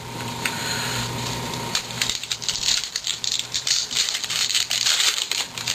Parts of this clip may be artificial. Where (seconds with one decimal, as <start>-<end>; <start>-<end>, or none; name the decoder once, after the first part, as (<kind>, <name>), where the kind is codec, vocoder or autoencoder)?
0.0-5.7 (vocoder, BigVGAN v2)